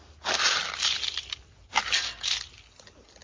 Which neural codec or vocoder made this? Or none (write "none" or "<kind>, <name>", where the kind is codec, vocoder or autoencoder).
none